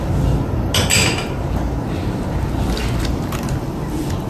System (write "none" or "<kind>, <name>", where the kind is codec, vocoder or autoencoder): none